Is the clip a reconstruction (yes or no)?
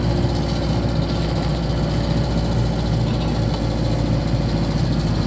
no